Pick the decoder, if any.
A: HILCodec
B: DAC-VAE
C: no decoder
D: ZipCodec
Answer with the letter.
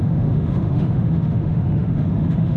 B